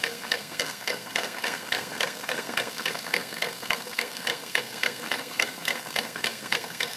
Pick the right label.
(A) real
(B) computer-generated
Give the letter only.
B